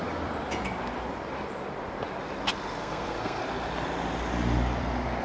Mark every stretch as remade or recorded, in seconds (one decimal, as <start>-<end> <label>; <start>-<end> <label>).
0.0-2.8 recorded; 2.8-3.4 remade; 3.4-5.2 recorded